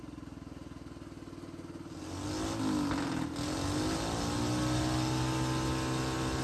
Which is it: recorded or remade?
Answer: recorded